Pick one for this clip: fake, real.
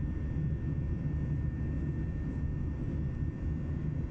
real